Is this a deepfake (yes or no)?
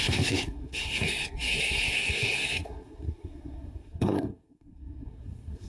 yes